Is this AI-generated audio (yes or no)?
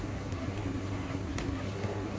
yes